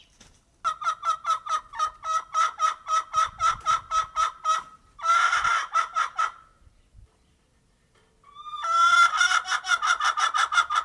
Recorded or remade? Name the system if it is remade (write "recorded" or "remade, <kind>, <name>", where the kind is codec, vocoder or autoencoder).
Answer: recorded